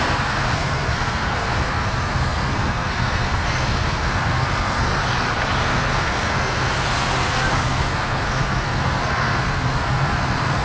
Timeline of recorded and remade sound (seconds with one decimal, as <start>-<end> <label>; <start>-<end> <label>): 0.0-4.9 remade; 4.9-5.6 recorded; 5.6-6.7 remade; 6.7-7.5 recorded; 7.5-10.6 remade